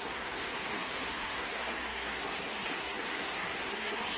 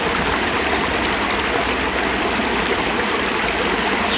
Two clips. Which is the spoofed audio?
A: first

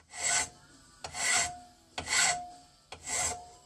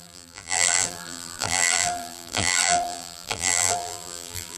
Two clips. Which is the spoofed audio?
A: second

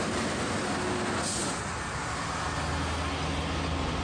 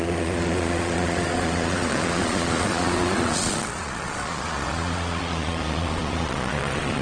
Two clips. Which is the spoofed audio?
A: second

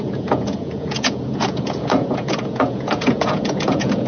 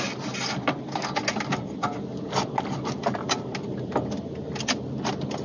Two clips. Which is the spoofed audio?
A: first